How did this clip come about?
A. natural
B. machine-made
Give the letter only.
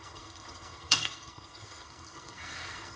B